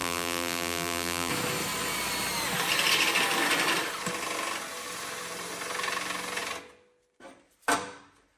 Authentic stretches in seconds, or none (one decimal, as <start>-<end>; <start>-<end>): 1.3-8.4